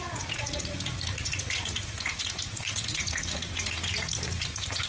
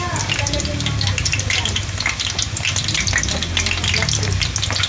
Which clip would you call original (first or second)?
second